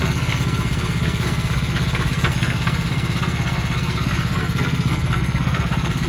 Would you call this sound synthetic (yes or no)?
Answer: yes